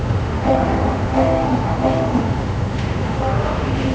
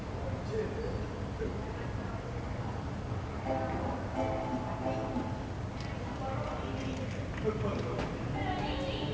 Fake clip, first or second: first